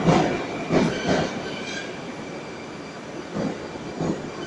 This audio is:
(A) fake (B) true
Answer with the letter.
B